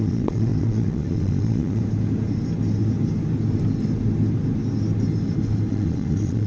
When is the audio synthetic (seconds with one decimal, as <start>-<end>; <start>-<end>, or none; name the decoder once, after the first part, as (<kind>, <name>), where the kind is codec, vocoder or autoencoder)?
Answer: 0.0-1.8 (vocoder, Vocos); 5.7-6.5